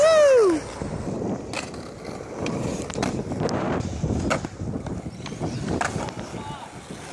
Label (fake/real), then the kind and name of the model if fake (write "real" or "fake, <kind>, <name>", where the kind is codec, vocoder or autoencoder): real